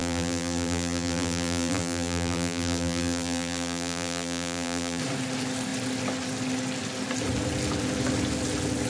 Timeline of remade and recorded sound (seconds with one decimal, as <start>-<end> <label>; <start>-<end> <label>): 0.0-5.0 remade; 5.0-8.9 recorded